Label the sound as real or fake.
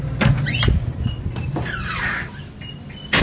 real